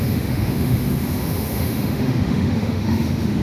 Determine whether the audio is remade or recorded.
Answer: remade